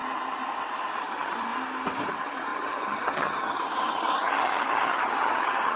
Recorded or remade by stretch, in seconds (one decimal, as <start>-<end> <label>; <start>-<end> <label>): 0.0-1.0 recorded; 1.0-1.5 remade; 1.5-2.1 recorded; 2.1-5.8 remade